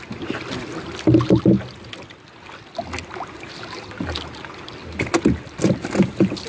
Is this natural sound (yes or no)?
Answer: yes